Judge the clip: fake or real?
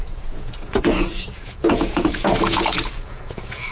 fake